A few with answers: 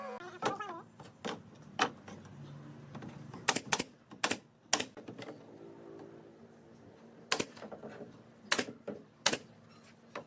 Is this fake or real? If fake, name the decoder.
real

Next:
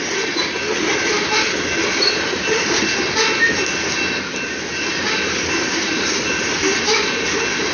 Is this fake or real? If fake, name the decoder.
real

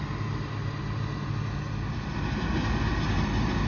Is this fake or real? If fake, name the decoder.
real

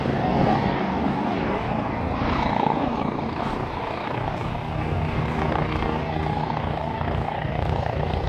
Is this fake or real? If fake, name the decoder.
fake, codec, DAC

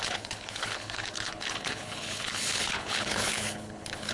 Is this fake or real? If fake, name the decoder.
fake, codec, HILCodec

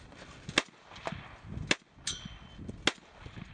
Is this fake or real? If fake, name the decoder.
real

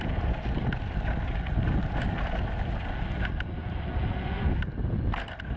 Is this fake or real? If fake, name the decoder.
real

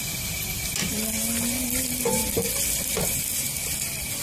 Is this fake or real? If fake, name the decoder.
real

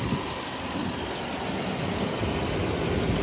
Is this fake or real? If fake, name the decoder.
real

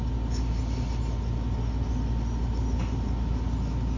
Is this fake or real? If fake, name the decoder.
real